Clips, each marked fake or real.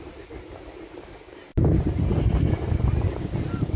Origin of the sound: real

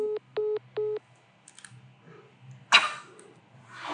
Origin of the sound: real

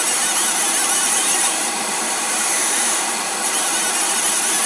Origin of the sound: fake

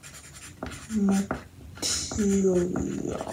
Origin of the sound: real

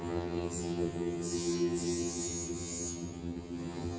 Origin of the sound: fake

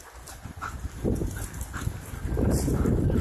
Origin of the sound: real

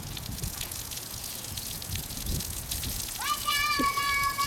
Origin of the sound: fake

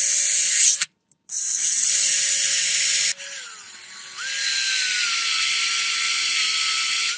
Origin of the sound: real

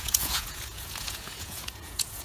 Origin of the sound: fake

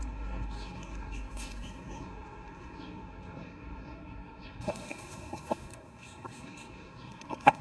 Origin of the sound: fake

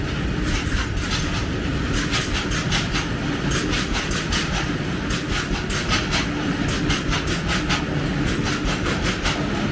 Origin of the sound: real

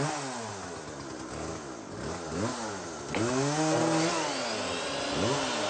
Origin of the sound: real